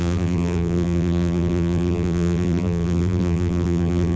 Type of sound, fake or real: fake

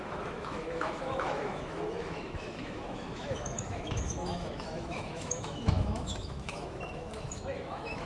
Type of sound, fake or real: fake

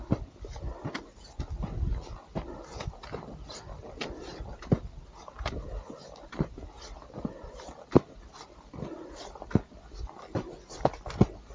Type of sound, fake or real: real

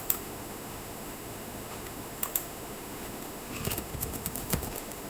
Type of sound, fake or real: fake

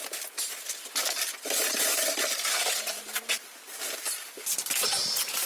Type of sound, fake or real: real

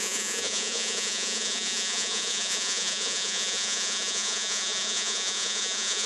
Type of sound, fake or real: fake